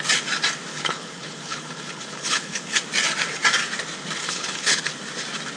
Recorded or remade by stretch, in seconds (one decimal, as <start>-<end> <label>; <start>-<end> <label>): 0.0-0.7 recorded; 0.7-2.8 remade; 2.8-4.2 recorded; 4.2-4.8 remade; 4.8-5.6 recorded